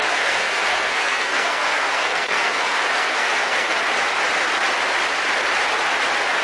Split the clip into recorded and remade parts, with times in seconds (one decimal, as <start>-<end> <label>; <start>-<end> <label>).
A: 0.0-3.8 remade; 3.8-6.4 recorded